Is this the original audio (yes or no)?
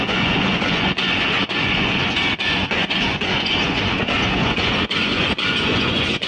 no